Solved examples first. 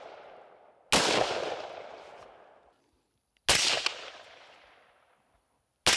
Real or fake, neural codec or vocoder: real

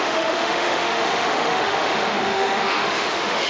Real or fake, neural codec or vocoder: fake, autoencoder, DAC-VAE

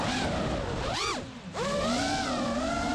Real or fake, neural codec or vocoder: real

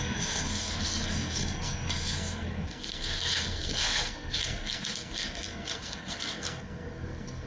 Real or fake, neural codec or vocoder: fake, codec, SNAC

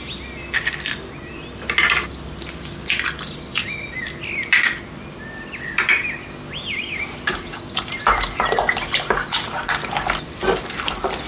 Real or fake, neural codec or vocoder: real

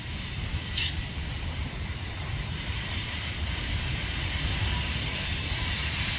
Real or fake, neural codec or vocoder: fake, vocoder, BigVGAN v2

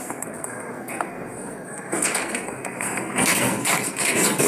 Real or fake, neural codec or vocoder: fake, codec, SNAC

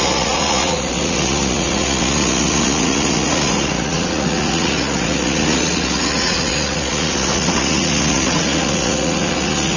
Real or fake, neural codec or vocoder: fake, vocoder, Vocos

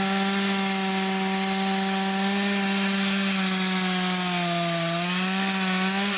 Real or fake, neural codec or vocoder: real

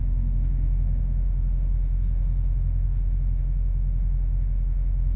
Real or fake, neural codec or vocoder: fake, autoencoder, DAC-VAE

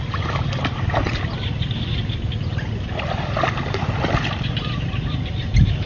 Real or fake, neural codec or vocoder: real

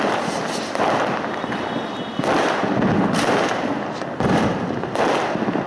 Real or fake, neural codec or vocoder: real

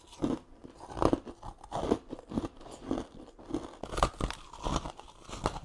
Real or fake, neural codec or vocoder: real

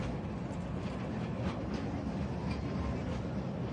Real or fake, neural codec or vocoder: real